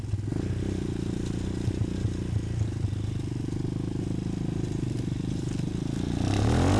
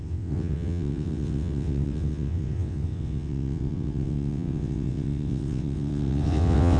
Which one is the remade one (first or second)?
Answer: second